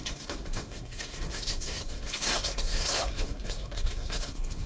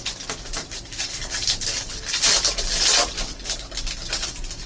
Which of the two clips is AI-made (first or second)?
first